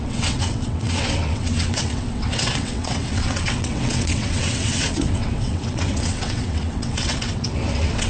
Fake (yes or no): yes